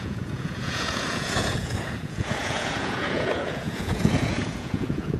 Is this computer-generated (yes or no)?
yes